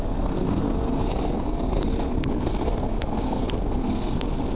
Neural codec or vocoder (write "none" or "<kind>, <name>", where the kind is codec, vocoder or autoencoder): codec, SNAC